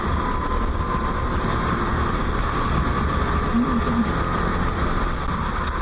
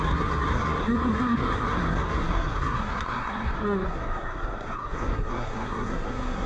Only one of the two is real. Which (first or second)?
first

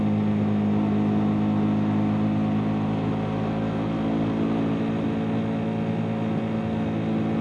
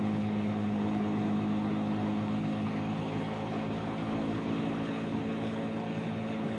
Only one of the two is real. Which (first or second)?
first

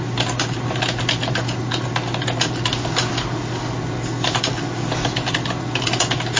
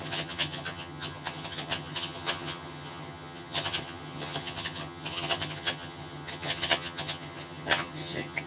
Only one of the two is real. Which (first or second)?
first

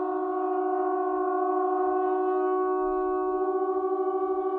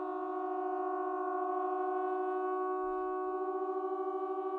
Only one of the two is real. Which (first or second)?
second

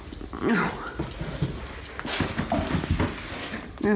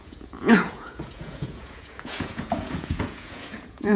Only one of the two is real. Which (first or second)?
first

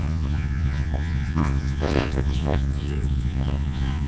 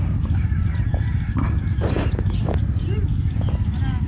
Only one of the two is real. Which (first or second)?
second